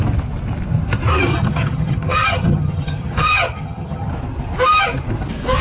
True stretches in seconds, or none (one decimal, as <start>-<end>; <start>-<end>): 0.0-1.3; 4.1-5.6